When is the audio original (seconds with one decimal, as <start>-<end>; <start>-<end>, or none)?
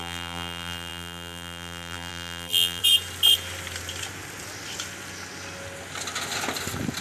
2.8-7.0